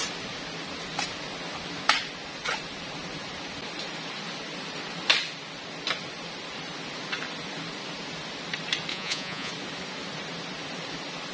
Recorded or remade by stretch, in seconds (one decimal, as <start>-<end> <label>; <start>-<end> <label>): 0.0-8.9 recorded; 8.9-9.5 remade; 9.5-11.3 recorded